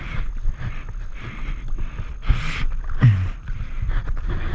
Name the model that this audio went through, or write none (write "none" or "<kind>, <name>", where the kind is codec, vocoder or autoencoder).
none